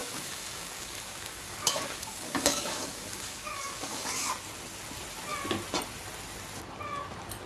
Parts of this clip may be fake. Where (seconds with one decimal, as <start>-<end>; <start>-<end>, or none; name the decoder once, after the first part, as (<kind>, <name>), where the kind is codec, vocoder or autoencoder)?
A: 0.0-4.3 (codec, DAC)